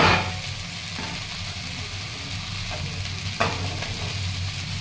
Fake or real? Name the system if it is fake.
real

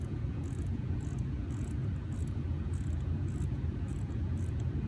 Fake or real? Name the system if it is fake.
fake, vocoder, Vocos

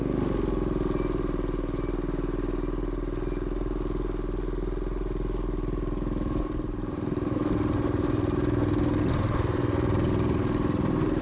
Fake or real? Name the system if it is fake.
real